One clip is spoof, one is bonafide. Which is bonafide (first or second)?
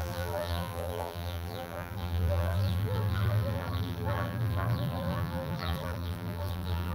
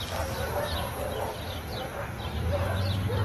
second